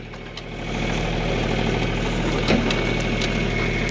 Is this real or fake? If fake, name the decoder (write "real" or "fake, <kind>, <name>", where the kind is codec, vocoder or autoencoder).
real